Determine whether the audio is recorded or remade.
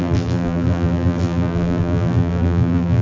remade